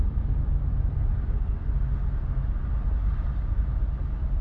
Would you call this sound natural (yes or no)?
yes